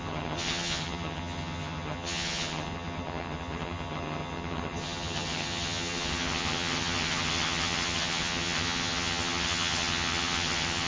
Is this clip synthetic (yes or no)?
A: yes